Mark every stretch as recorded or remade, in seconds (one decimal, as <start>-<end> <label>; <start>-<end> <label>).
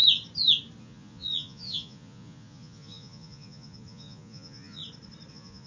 0.0-0.8 recorded; 0.8-4.8 remade; 4.8-5.3 recorded; 5.3-5.7 remade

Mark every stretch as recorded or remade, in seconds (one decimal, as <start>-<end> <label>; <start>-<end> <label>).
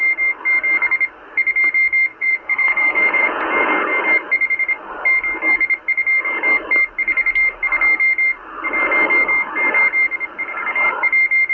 0.0-2.1 recorded; 2.1-4.0 remade; 4.0-11.5 recorded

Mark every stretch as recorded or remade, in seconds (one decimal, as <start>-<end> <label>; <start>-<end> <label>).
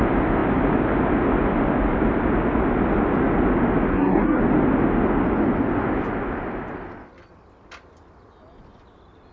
0.0-3.9 recorded; 3.9-4.4 remade; 4.4-9.3 recorded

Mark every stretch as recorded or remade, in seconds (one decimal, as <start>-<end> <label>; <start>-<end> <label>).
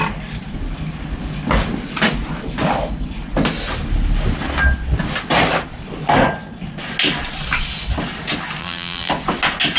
0.0-8.6 recorded; 8.6-9.1 remade; 9.1-9.8 recorded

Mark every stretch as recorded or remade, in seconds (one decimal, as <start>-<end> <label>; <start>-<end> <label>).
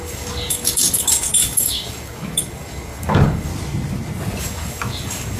0.0-3.5 remade; 3.5-4.4 recorded; 4.4-5.4 remade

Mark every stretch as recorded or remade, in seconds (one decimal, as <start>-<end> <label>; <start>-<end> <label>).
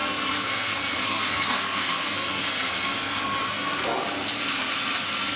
0.0-4.0 remade; 4.0-5.3 recorded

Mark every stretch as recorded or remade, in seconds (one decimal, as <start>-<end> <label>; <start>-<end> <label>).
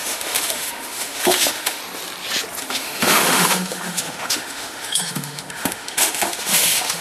0.0-1.8 remade; 1.8-2.6 recorded; 2.6-7.0 remade